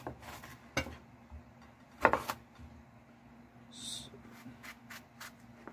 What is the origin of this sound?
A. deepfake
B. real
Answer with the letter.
B